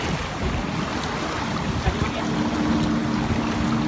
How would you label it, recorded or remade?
recorded